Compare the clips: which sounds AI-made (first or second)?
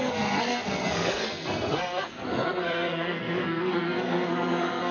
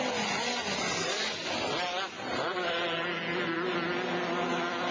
first